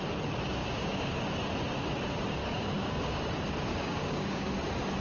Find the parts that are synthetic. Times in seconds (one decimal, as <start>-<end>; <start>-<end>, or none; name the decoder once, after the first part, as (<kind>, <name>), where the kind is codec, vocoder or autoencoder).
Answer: 0.6-1.2 (codec, DAC); 2.4-3.3; 3.7-4.5